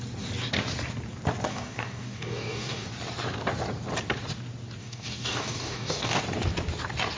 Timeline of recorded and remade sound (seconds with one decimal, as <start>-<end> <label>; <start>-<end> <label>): 0.0-1.5 recorded; 1.5-2.9 remade; 2.9-4.8 recorded; 4.8-6.2 remade; 6.2-7.2 recorded